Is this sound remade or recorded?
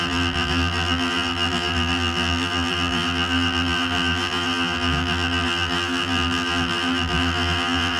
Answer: remade